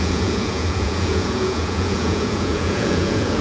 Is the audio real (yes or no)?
no